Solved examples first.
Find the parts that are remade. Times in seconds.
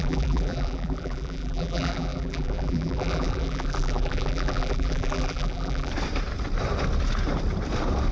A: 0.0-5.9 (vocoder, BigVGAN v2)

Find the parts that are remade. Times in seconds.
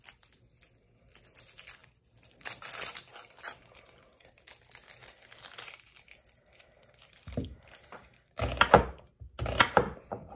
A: 1.8-4.3 (vocoder, BigVGAN v2); 5.0-7.1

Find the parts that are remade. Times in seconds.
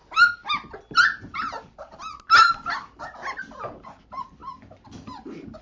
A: none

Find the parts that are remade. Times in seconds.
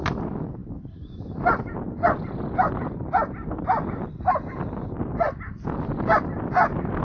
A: none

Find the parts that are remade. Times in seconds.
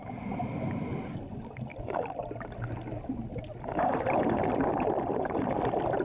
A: none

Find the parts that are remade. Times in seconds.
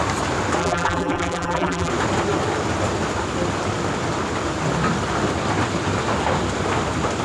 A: 0.6-1.9 (vocoder, BigVGAN v2)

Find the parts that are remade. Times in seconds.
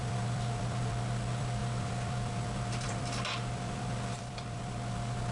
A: 0.0-5.3 (vocoder, BigVGAN v2)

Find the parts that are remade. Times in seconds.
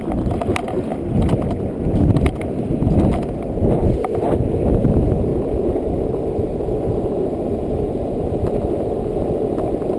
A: 0.0-5.3 (vocoder, BigVGAN v2); 8.2-10.0